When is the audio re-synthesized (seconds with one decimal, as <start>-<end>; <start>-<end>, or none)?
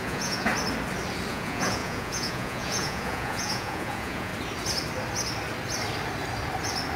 0.0-0.5; 1.3-4.3